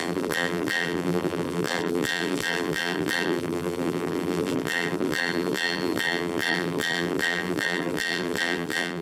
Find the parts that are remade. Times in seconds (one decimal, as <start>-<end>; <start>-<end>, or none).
0.0-9.0